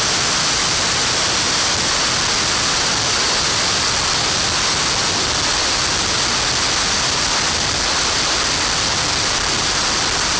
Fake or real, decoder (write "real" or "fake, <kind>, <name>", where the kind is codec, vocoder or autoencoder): real